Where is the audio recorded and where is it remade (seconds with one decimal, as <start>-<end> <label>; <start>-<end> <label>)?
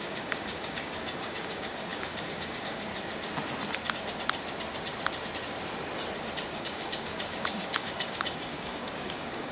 0.0-2.9 remade; 2.9-6.5 recorded; 6.5-9.5 remade